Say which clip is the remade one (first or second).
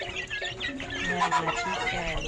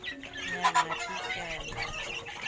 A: first